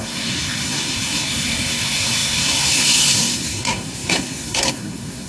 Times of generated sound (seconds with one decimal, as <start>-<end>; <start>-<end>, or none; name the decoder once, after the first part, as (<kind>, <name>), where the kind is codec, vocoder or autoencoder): 0.0-5.3 (codec, SNAC)